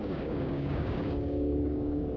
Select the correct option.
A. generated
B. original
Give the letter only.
A